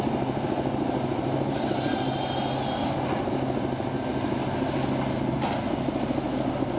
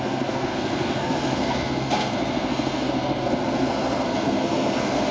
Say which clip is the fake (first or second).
second